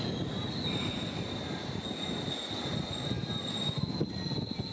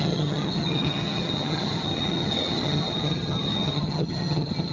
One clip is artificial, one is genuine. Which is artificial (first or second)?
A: second